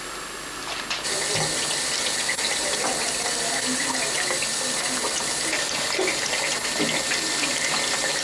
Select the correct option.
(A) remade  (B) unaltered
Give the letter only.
B